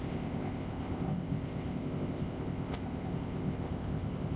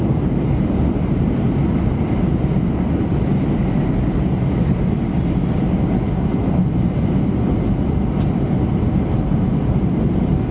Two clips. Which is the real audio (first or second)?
second